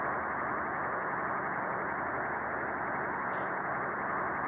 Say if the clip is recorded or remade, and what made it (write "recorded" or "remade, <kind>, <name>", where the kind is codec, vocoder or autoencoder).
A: recorded